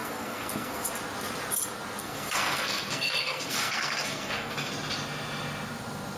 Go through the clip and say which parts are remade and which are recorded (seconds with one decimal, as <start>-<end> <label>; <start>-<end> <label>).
0.0-0.9 remade; 0.9-2.0 recorded; 2.0-4.7 remade; 4.7-6.2 recorded